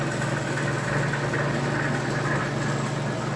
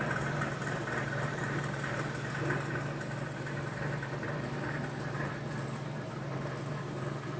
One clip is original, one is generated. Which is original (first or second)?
first